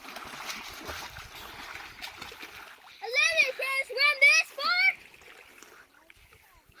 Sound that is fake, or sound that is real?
real